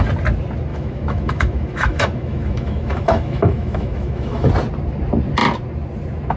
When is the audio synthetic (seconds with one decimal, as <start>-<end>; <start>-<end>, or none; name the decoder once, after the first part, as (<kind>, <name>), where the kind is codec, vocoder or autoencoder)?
0.7-4.5 (autoencoder, DAC-VAE)